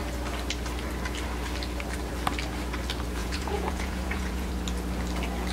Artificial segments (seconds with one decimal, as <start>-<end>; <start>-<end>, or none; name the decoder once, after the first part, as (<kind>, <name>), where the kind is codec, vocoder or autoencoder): 3.2-4.5 (vocoder, Vocos)